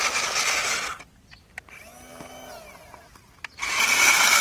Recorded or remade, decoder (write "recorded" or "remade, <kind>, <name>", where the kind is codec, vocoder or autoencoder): recorded